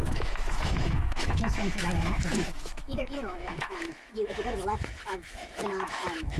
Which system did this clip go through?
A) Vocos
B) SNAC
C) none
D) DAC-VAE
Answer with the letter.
D